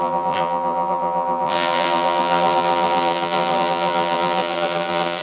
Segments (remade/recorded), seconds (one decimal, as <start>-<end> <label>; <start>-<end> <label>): 0.0-5.2 remade